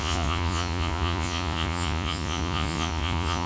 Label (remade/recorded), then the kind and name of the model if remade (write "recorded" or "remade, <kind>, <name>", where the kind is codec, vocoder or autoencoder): remade, vocoder, Vocos